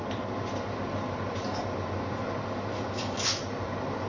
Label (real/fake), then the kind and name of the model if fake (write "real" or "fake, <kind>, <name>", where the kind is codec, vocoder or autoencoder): real